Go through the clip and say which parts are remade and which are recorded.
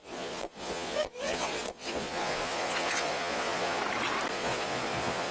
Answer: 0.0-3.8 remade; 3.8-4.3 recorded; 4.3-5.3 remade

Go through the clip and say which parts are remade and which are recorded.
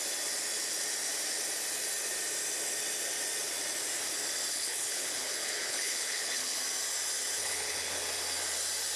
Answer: 0.0-4.5 recorded; 4.5-6.6 remade; 6.6-7.4 recorded; 7.4-8.0 remade; 8.0-9.0 recorded